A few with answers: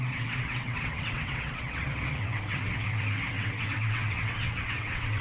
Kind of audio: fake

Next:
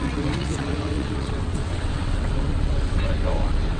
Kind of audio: fake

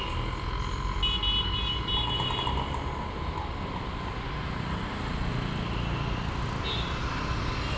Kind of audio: real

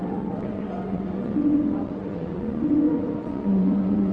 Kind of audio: fake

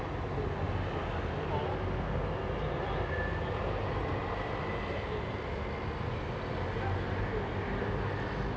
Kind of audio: real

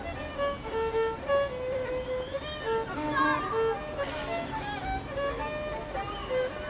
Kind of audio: real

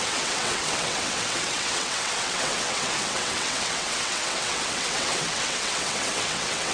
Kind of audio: fake